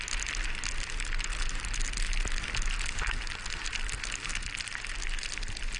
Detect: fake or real real